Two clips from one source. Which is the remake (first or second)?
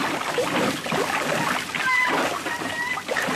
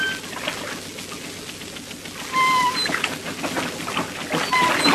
first